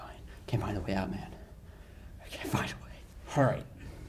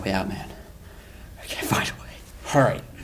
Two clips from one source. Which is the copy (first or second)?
first